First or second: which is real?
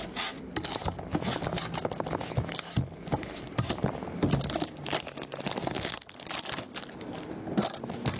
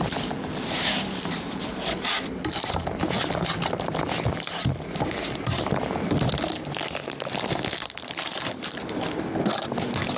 first